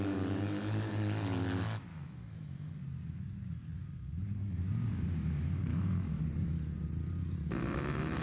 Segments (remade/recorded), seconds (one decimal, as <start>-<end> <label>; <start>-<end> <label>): 0.0-1.9 recorded; 1.9-2.7 remade; 2.7-5.7 recorded; 5.7-6.2 remade; 6.2-8.2 recorded